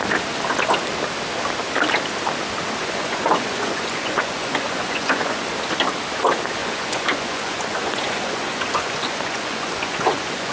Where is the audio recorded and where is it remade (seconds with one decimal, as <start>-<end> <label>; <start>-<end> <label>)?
0.0-2.8 recorded; 2.8-5.5 remade; 5.5-6.6 recorded; 6.6-10.5 remade